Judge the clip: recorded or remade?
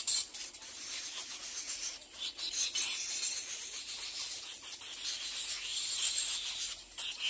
recorded